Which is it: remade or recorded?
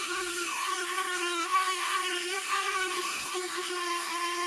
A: remade